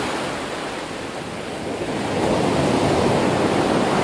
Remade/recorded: recorded